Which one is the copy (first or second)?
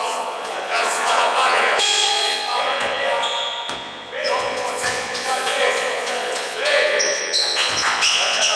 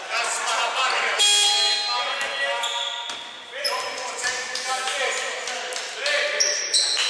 first